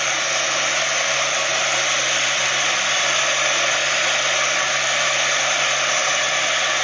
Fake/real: real